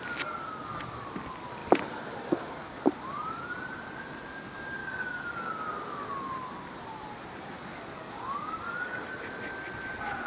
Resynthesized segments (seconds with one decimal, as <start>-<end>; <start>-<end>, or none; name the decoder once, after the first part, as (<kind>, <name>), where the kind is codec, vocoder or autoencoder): 4.8-5.5 (codec, DAC); 7.7-9.1